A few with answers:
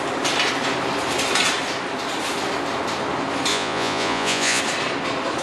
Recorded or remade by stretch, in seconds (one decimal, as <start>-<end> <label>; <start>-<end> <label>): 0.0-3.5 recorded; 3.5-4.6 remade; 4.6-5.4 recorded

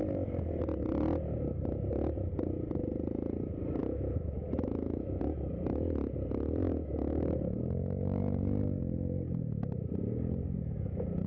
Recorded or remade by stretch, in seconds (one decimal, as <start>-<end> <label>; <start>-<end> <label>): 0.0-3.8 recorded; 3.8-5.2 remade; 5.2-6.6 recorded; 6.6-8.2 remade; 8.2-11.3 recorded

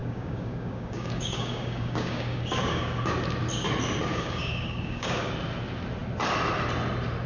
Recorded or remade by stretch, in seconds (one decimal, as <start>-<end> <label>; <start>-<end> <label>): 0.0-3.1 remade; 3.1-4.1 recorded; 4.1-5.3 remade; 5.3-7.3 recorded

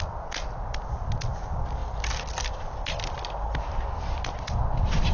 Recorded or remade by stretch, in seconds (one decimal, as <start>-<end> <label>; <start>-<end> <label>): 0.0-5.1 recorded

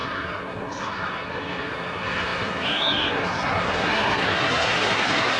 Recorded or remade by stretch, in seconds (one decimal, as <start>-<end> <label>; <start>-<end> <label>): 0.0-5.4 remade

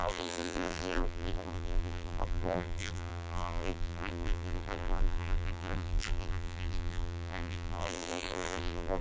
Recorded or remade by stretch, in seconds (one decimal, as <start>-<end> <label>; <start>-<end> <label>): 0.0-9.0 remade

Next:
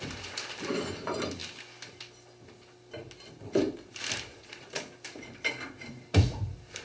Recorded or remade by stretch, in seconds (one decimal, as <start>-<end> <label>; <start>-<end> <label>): 0.0-4.3 recorded; 4.3-4.8 remade; 4.8-6.8 recorded

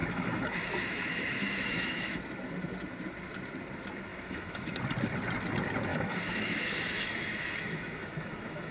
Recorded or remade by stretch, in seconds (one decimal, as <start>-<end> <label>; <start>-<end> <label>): 0.0-2.2 remade; 2.2-4.1 recorded; 4.1-4.8 remade; 4.8-5.9 recorded; 5.9-8.7 remade